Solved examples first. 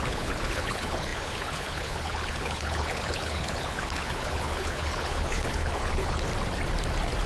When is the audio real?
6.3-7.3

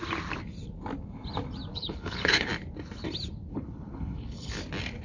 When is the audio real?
0.0-1.7; 2.5-3.5; 4.6-5.0

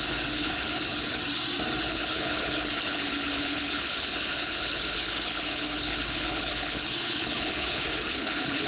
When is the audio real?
1.2-1.8